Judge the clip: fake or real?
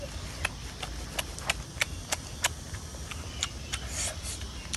real